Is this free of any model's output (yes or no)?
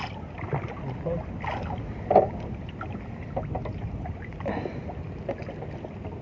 yes